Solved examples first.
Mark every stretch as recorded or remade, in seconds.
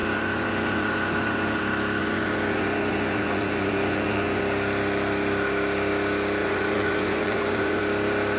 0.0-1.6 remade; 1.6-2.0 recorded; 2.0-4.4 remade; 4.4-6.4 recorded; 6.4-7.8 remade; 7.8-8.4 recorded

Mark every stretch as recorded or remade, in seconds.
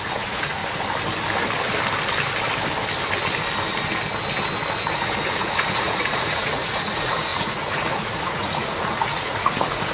0.0-0.6 remade; 0.6-5.3 recorded; 5.3-9.9 remade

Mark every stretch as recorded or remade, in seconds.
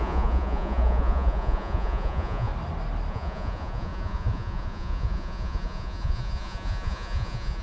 0.0-2.5 remade; 2.5-3.1 recorded; 3.1-7.6 remade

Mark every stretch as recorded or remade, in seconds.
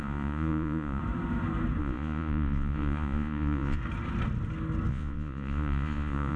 0.0-1.0 remade; 1.0-1.8 recorded; 1.8-3.8 remade; 3.8-4.9 recorded; 4.9-6.4 remade